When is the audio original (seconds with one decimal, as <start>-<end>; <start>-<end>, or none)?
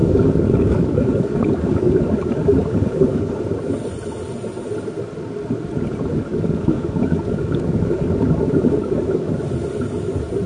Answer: 3.3-6.3; 9.4-10.5